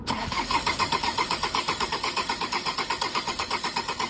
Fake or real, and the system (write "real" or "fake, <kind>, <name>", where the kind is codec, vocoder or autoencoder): fake, codec, DAC